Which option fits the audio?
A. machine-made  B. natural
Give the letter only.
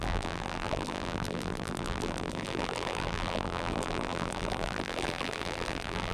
A